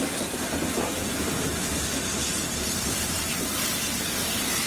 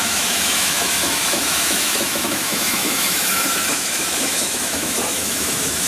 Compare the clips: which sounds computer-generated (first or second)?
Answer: second